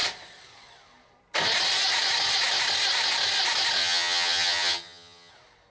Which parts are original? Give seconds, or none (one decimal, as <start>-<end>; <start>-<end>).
0.0-3.8; 5.3-5.7